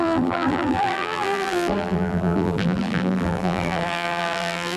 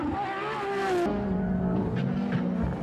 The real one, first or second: second